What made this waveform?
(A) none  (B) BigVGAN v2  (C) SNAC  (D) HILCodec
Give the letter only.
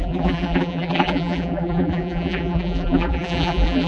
B